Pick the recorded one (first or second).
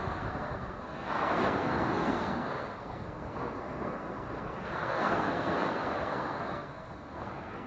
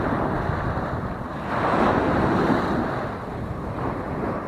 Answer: second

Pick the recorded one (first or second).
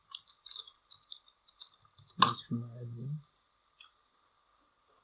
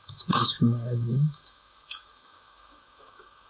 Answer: first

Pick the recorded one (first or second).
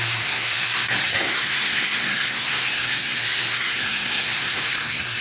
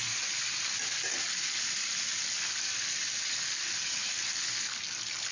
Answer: second